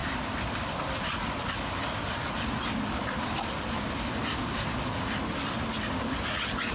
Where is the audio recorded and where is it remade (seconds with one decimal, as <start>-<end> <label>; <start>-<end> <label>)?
0.0-6.7 recorded